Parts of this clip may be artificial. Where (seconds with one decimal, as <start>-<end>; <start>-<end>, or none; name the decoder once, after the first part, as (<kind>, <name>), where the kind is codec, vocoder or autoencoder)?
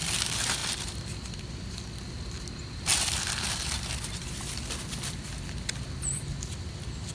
none